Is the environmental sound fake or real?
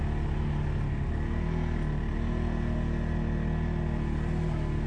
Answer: real